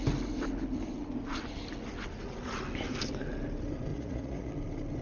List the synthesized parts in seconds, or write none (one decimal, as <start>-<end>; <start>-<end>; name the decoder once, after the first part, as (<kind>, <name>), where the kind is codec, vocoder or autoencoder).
3.9-4.5 (vocoder, Vocos)